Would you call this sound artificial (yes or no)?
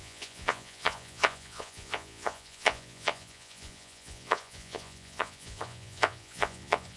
yes